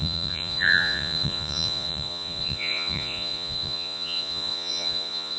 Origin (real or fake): fake